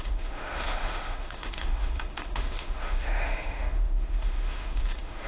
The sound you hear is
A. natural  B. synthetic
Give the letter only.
B